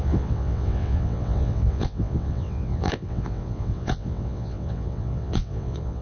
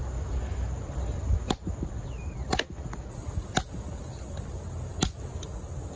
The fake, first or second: first